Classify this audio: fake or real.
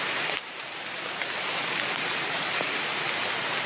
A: real